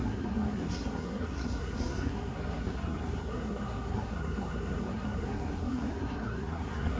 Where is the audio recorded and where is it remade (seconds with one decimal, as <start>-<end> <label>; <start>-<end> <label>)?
0.0-7.0 remade